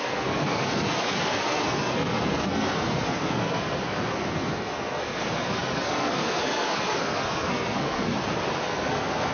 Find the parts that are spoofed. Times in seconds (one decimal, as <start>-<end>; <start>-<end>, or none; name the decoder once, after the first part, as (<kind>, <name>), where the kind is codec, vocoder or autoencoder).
0.0-8.1 (codec, SNAC); 8.6-9.3